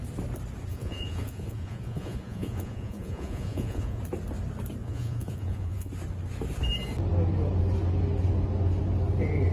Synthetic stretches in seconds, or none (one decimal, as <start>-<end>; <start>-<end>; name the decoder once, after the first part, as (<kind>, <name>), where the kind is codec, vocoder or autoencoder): 0.7-4.0 (vocoder, Vocos); 4.8-5.9